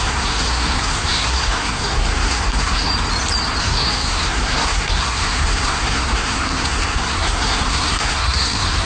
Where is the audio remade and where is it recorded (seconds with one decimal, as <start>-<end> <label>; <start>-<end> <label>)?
0.0-2.9 remade; 2.9-3.6 recorded; 3.6-8.8 remade